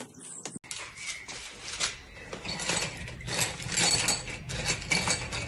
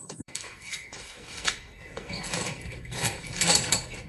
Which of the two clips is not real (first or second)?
second